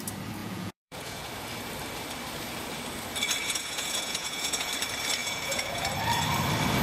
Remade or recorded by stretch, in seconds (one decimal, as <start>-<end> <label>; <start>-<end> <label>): 0.0-0.4 recorded; 0.4-1.3 remade; 1.3-3.4 recorded; 3.4-4.7 remade; 4.7-5.2 recorded; 5.2-5.9 remade; 5.9-6.8 recorded